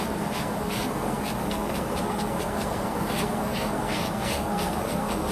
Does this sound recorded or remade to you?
remade